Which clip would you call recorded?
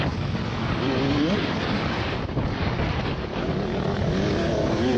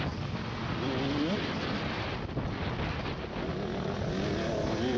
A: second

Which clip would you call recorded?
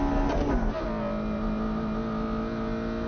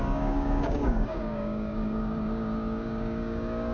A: first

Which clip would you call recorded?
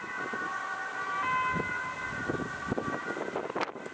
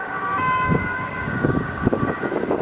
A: first